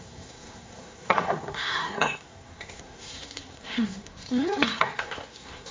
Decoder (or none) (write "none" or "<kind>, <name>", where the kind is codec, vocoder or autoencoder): codec, SNAC